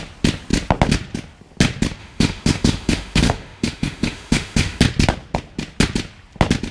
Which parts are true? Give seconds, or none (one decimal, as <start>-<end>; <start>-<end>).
0.0-2.0; 4.8-6.7

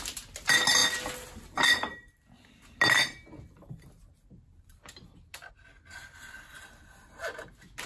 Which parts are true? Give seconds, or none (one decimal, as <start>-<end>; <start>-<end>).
0.0-7.9

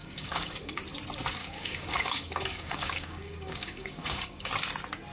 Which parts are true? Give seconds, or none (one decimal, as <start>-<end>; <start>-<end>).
0.8-1.4; 4.5-5.1